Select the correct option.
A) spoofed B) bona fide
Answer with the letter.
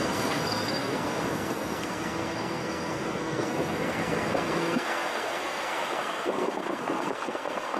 A